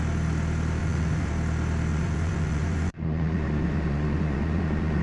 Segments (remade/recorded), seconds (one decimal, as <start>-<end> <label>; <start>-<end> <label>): 0.0-0.8 recorded; 0.8-1.3 remade; 1.3-1.9 recorded; 1.9-5.0 remade